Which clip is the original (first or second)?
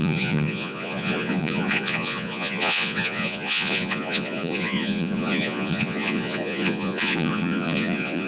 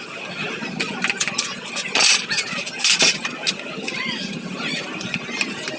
second